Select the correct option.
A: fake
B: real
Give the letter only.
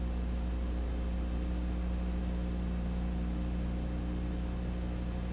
B